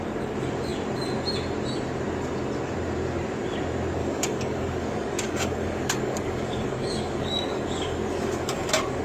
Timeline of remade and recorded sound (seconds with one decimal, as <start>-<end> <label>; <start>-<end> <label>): 0.0-4.0 recorded; 4.0-9.0 remade